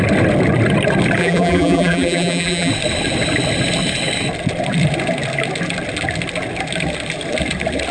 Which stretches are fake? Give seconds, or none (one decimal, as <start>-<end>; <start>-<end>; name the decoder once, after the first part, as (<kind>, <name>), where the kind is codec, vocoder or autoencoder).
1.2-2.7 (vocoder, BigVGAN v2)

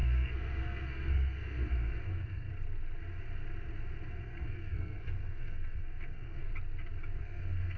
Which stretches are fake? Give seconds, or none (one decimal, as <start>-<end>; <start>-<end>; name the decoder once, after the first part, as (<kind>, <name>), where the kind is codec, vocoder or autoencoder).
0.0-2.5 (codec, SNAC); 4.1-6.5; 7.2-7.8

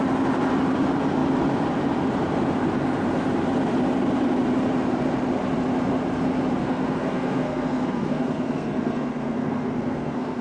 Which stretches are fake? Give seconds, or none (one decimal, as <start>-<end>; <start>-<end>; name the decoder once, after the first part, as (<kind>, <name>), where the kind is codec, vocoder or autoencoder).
6.6-10.4 (codec, SNAC)

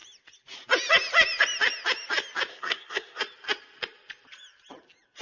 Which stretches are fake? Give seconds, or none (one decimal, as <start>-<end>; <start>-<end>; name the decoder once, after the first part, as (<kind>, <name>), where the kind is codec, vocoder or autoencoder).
2.5-3.2 (codec, SNAC)

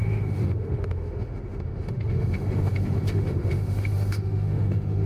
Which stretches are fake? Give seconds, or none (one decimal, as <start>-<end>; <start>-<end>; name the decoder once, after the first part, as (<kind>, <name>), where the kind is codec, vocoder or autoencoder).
0.0-5.1 (autoencoder, DAC-VAE)

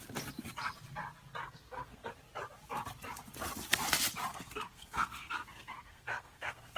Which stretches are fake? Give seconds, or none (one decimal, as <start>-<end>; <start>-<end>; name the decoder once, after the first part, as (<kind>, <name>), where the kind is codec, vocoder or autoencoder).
1.4-2.1 (codec, SNAC); 4.3-6.8

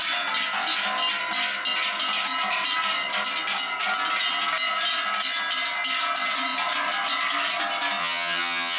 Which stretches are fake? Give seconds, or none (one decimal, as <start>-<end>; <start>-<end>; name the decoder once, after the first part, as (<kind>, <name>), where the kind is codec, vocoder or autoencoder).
8.0-8.8 (vocoder, HiFi-GAN)

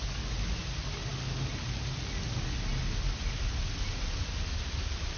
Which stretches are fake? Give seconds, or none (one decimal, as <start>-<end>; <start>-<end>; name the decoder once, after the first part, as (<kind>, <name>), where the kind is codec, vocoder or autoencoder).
none